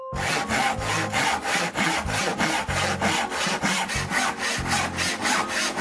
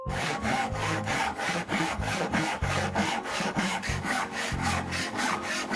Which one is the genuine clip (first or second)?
first